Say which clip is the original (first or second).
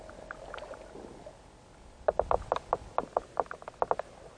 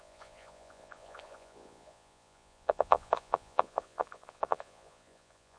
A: first